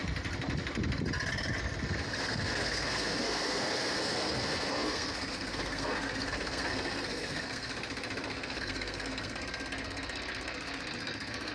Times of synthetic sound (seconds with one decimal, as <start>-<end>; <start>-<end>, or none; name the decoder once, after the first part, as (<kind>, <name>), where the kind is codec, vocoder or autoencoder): 2.2-7.7 (codec, SNAC); 8.3-11.5